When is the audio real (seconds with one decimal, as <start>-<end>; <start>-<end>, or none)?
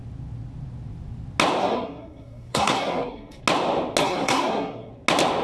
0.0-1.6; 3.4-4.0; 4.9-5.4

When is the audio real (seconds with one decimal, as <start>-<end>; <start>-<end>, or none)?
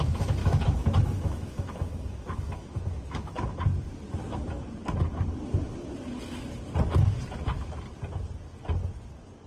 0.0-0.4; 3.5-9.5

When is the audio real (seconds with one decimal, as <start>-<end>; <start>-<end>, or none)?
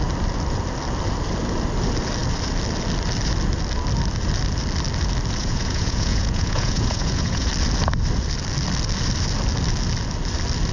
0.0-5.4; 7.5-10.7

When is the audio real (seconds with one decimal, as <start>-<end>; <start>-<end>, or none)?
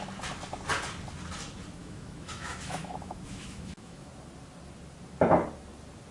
0.0-1.8; 4.1-6.1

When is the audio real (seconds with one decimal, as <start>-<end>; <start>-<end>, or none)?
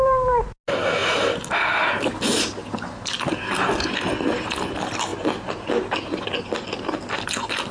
0.0-7.7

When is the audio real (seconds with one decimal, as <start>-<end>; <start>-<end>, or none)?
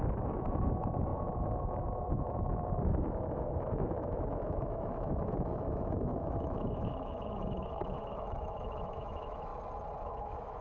9.5-10.0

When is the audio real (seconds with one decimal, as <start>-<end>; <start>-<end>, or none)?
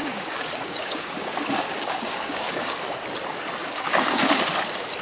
3.0-3.6; 4.2-5.0